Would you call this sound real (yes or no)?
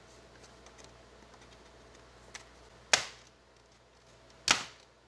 yes